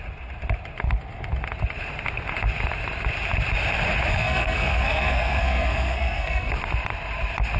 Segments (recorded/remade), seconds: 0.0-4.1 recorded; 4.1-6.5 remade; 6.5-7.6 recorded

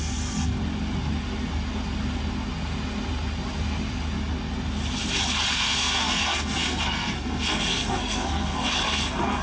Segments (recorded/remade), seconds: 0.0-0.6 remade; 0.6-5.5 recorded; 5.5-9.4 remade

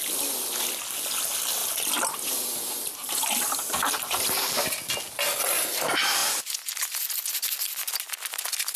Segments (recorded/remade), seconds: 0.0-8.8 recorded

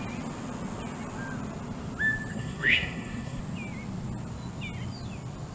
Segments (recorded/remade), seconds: 0.0-2.3 recorded; 2.3-3.4 remade; 3.4-5.5 recorded

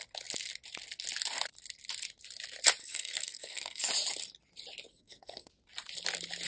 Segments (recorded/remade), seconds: 0.0-2.8 recorded; 2.8-3.9 remade; 3.9-4.9 recorded; 4.9-5.5 remade; 5.5-6.5 recorded

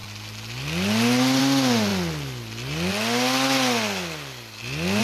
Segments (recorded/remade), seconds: 0.0-5.0 recorded

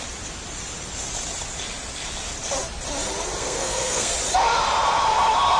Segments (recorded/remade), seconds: 0.0-3.4 recorded; 3.4-4.1 remade; 4.1-5.6 recorded

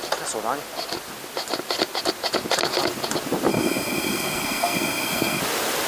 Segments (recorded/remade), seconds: 0.0-3.5 recorded; 3.5-5.4 remade; 5.4-5.9 recorded